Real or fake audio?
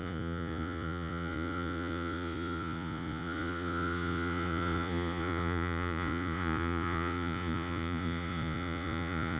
fake